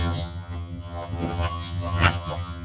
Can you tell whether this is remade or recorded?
remade